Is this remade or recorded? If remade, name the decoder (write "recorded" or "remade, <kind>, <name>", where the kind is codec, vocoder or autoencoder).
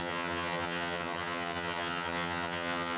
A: remade, vocoder, HiFi-GAN